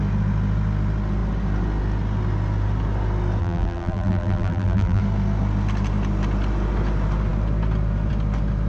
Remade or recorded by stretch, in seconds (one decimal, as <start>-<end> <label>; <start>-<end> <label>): 0.0-3.4 recorded; 3.4-5.0 remade; 5.0-8.7 recorded